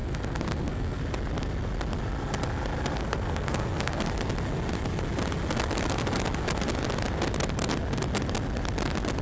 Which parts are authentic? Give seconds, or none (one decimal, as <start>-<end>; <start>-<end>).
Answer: 1.0-3.0; 4.0-9.2